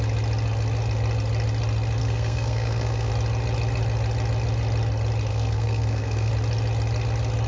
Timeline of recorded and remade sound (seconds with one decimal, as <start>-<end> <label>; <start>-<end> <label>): 0.0-2.0 recorded; 2.0-3.1 remade; 3.1-5.3 recorded; 5.3-6.3 remade; 6.3-7.5 recorded